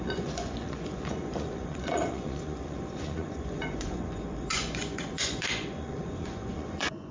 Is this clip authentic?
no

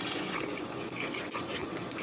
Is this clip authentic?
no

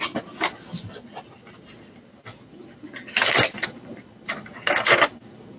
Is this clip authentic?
yes